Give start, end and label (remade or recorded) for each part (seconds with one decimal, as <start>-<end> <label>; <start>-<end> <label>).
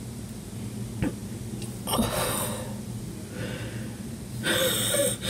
0.0-5.3 recorded